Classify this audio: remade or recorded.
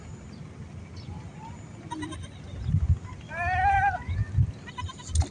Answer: recorded